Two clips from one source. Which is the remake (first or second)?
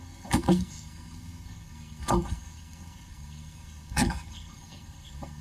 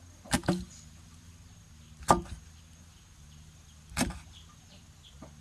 first